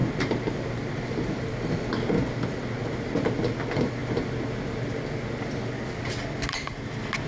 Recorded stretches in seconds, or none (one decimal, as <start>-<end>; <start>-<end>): 1.7-7.3